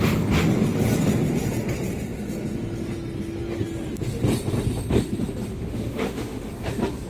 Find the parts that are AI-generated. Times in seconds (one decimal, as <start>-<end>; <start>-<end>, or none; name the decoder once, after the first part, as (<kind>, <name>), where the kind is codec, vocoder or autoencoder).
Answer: 5.5-6.5 (autoencoder, DAC-VAE)